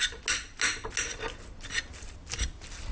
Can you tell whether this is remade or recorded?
recorded